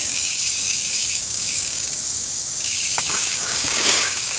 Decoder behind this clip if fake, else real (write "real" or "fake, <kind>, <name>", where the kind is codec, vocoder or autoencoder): fake, codec, DAC